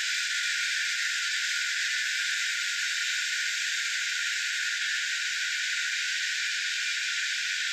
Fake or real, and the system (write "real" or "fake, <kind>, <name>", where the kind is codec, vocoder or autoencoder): real